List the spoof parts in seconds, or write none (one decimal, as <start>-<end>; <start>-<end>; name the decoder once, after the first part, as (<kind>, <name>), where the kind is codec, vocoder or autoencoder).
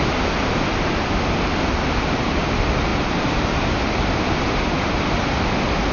none